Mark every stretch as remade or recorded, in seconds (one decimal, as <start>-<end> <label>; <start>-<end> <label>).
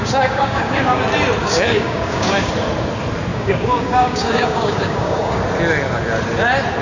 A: 0.0-1.0 remade; 1.0-1.4 recorded; 1.4-2.5 remade; 2.5-3.3 recorded; 3.3-5.4 remade; 5.4-6.8 recorded